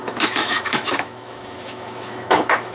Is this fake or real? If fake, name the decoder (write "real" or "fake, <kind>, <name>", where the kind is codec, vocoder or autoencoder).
fake, autoencoder, DAC-VAE